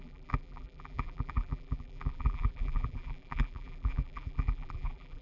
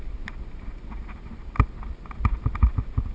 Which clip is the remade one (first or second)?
first